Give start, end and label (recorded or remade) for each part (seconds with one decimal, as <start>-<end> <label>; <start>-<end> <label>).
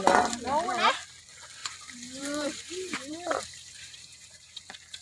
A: 0.0-1.6 recorded; 1.6-4.6 remade; 4.6-5.0 recorded